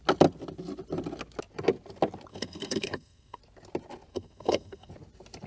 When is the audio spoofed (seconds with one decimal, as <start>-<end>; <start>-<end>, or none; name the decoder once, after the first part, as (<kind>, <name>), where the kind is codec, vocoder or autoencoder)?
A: 2.3-3.4 (codec, SNAC); 4.1-4.9